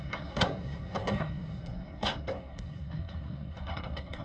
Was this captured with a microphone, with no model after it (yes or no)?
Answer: no